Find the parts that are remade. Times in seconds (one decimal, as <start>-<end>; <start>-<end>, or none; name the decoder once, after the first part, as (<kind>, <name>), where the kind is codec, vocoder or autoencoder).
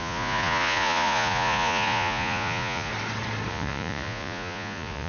0.0-2.9 (vocoder, Vocos); 3.5-5.1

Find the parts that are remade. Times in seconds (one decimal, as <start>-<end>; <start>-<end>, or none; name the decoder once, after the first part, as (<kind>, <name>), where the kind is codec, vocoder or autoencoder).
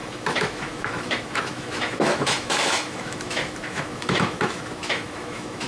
0.0-5.7 (autoencoder, DAC-VAE)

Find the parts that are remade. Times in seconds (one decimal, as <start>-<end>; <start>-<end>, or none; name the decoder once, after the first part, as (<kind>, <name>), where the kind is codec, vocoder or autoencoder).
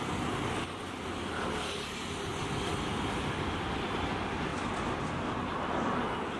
none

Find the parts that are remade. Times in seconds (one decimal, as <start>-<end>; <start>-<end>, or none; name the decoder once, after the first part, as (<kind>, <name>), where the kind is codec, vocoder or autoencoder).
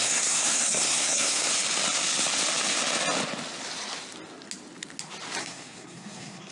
0.0-1.5 (codec, SNAC); 5.4-6.5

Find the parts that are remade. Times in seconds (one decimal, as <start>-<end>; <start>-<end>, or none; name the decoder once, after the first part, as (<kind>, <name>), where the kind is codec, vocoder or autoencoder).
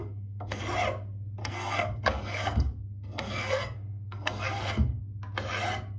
0.0-0.6 (codec, SNAC); 1.4-5.0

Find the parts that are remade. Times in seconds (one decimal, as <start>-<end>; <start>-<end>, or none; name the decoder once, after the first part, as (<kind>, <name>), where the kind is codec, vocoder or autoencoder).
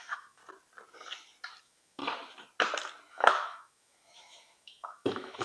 0.0-0.4 (autoencoder, DAC-VAE); 1.6-2.0; 3.1-5.4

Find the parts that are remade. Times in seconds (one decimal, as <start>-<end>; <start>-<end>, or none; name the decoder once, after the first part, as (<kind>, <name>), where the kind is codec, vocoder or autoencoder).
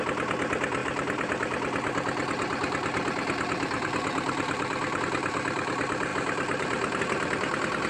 0.8-5.0 (vocoder, BigVGAN v2); 6.1-7.0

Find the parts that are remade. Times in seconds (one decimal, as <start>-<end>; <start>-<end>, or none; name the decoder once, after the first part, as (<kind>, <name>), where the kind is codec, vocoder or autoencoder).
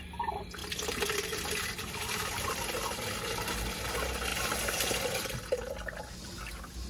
0.6-2.2 (vocoder, BigVGAN v2)